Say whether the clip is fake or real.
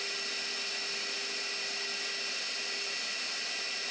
real